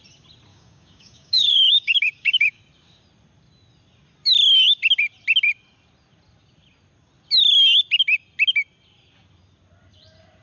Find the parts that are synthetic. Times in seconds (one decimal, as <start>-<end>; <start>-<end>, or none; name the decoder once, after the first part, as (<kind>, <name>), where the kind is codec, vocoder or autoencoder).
0.5-2.6 (codec, DAC)

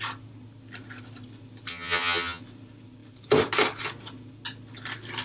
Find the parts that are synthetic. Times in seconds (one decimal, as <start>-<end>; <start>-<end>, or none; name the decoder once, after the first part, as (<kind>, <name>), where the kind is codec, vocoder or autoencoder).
1.7-2.4 (vocoder, HiFi-GAN)

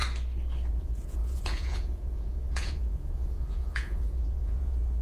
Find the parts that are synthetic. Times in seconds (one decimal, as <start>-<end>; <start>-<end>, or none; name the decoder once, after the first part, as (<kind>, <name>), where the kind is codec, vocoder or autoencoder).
0.7-5.0 (vocoder, Vocos)

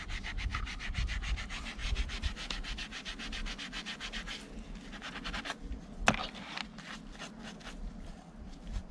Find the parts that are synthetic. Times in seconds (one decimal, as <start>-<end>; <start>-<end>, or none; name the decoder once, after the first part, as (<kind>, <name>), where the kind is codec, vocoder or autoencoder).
none